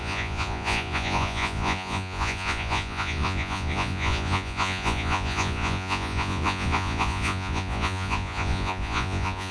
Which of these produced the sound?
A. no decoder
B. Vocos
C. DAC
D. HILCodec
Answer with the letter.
B